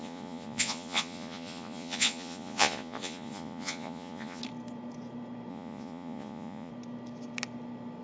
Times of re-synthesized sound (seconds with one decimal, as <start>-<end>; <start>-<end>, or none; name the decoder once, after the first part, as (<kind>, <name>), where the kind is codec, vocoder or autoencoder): 0.0-4.4 (vocoder, Vocos); 5.5-6.7